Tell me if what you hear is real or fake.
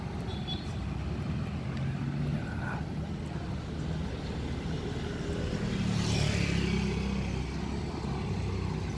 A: real